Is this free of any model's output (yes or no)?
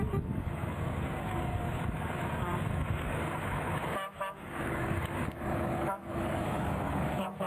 no